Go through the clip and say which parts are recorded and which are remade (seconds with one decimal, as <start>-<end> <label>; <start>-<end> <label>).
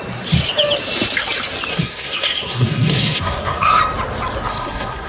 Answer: 0.0-1.7 recorded; 1.7-3.8 remade; 3.8-4.5 recorded; 4.5-5.1 remade